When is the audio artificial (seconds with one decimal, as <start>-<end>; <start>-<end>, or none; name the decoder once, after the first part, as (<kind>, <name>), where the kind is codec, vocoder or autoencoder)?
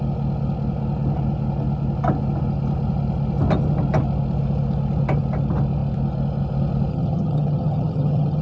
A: 6.9-8.4 (vocoder, HiFi-GAN)